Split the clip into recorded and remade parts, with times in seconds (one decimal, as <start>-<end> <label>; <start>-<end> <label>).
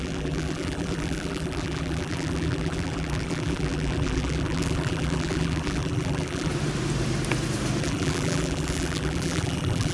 0.0-6.5 remade; 6.5-7.8 recorded; 7.8-9.9 remade